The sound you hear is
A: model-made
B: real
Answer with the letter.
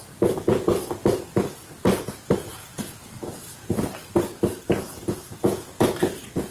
B